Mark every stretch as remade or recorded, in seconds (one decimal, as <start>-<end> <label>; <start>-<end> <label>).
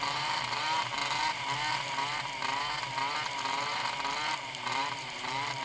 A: 0.0-1.0 remade; 1.0-4.4 recorded; 4.4-5.6 remade